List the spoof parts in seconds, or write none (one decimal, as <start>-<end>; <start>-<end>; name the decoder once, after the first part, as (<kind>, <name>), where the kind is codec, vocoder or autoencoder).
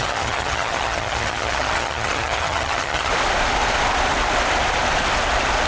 0.0-3.1 (vocoder, HiFi-GAN)